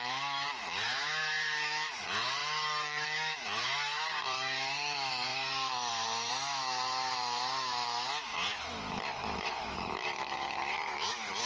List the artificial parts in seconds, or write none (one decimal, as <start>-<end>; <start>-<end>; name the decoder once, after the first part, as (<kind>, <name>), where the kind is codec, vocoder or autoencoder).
0.0-11.5 (autoencoder, DAC-VAE)